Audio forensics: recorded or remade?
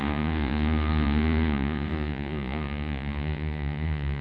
remade